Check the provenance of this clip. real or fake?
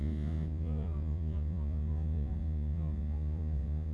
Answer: fake